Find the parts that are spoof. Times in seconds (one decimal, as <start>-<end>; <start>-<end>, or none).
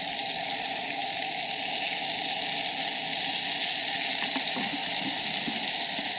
0.0-1.0; 3.8-6.2